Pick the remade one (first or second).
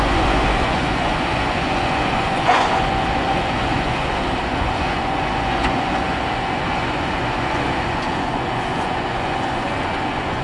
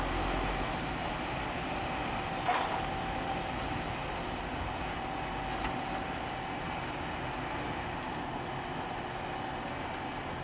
first